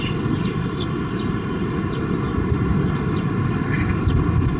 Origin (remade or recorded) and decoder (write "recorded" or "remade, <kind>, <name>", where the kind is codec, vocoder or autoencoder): recorded